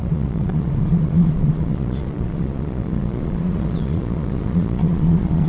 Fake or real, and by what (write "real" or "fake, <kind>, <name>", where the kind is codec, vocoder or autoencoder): fake, vocoder, Vocos